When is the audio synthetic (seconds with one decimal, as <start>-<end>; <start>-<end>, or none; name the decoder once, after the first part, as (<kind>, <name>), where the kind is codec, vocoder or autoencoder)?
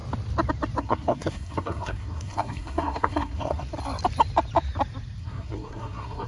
0.8-3.7 (codec, SNAC); 5.2-6.3